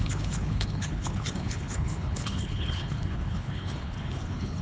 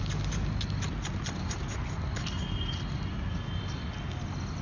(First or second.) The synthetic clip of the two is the first